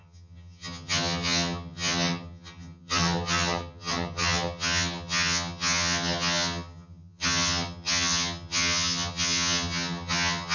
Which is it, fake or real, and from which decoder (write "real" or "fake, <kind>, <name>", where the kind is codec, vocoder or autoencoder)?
fake, vocoder, HiFi-GAN